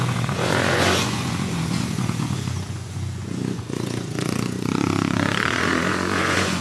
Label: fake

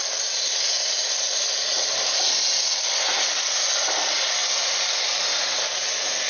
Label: real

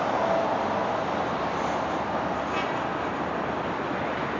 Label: real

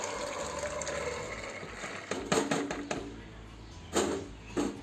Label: real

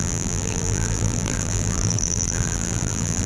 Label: fake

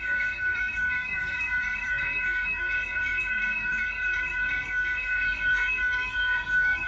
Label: fake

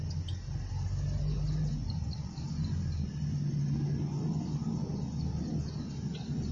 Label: real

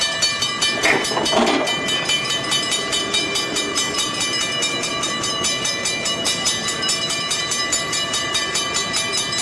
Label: fake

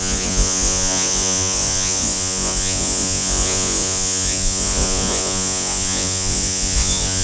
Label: fake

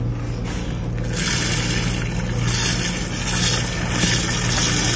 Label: real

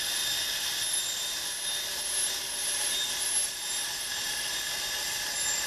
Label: fake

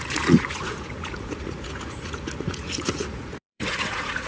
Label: fake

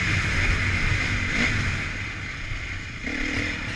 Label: real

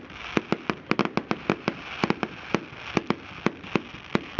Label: real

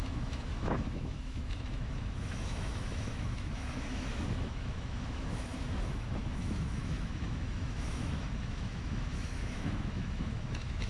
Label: fake